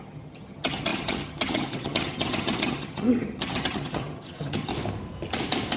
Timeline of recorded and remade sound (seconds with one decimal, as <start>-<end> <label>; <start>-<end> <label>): 0.0-4.7 remade; 4.7-5.8 recorded